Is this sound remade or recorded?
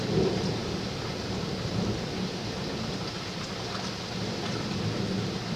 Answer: recorded